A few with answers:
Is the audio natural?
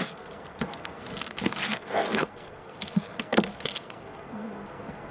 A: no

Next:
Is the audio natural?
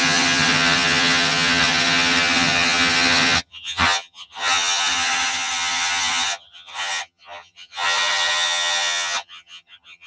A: no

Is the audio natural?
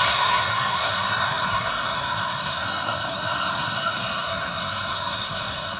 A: no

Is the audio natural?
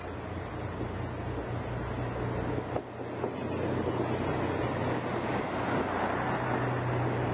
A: yes